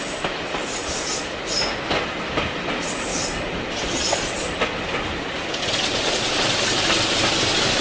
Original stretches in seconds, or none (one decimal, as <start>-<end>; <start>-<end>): 0.0-7.8